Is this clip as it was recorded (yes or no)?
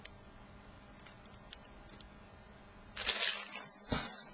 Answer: yes